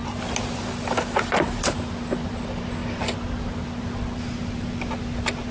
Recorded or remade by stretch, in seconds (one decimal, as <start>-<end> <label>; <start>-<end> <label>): 0.0-5.5 recorded